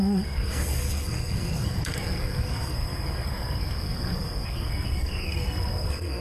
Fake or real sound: fake